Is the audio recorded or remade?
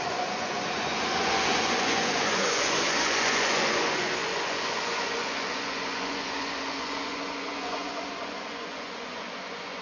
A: remade